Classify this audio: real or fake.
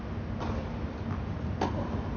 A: real